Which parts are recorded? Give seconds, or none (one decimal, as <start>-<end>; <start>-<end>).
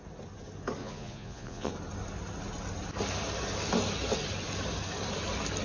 0.0-0.8; 1.7-5.6